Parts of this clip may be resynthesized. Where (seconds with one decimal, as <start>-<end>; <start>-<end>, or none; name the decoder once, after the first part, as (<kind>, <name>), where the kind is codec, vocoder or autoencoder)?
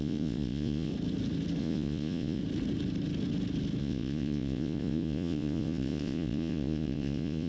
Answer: 0.0-0.9 (vocoder, Vocos); 1.6-2.4; 3.8-7.5